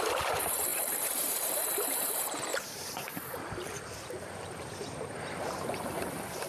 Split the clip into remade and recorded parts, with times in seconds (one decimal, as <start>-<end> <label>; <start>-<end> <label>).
0.0-6.5 remade